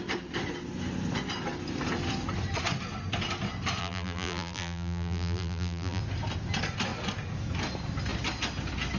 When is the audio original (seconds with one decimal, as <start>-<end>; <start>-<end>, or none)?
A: 0.0-3.8; 6.0-9.0